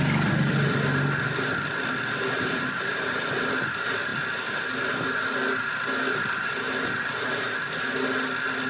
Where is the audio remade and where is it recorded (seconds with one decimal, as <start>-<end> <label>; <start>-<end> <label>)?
0.0-8.7 recorded